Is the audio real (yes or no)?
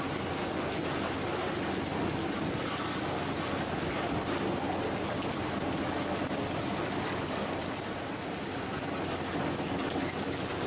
yes